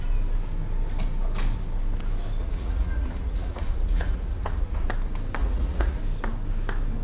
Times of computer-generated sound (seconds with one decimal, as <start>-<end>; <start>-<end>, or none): 2.4-4.9; 5.4-6.0

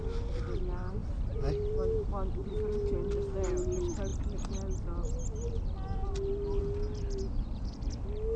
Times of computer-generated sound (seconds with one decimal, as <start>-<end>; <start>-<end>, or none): none

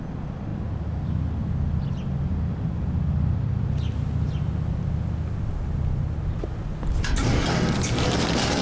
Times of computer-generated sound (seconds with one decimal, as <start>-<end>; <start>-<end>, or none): none

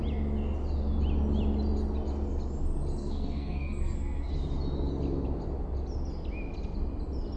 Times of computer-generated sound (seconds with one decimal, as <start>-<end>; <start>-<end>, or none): 3.0-4.3